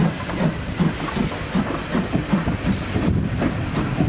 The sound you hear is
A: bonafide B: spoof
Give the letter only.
A